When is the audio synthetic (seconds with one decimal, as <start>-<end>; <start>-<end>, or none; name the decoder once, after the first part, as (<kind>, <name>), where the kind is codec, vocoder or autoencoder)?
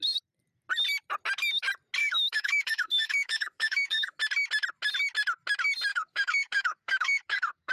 2.0-4.2 (codec, DAC); 5.9-7.7